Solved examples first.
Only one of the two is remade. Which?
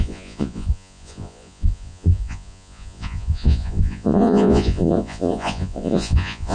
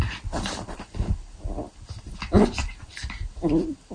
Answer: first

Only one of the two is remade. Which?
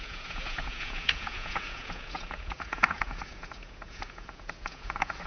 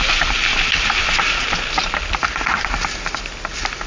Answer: first